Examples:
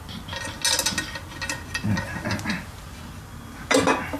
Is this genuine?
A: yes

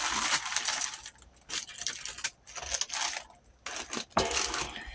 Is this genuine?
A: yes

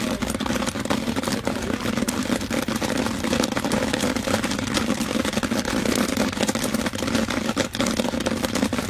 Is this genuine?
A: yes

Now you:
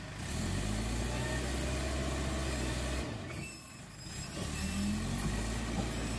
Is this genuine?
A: yes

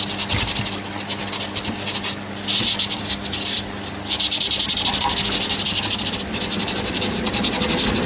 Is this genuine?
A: yes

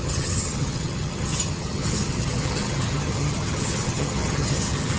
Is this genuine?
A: no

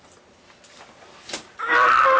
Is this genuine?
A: yes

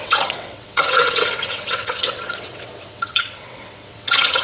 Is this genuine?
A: no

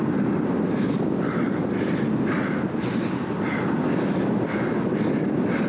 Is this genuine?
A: yes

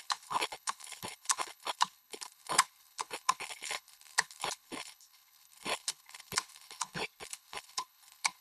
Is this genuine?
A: no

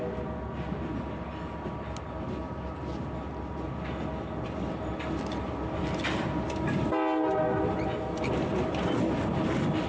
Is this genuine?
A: yes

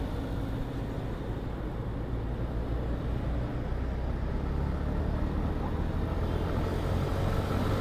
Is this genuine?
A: yes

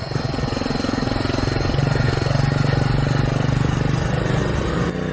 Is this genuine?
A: yes